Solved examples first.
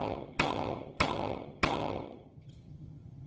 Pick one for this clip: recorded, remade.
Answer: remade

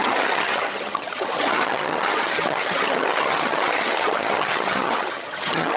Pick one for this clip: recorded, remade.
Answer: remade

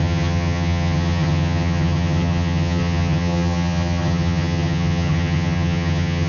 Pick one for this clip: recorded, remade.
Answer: remade